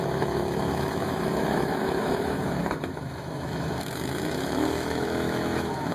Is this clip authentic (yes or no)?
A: no